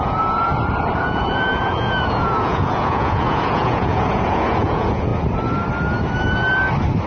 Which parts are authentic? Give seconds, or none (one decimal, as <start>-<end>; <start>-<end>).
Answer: 0.5-1.0; 5.1-7.1